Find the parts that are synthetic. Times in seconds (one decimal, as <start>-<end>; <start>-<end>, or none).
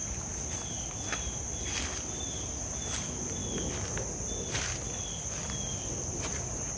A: 0.0-1.6